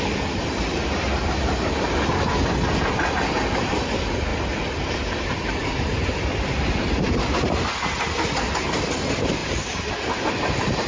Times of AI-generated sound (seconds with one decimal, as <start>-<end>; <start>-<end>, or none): 4.3-7.6; 9.4-9.9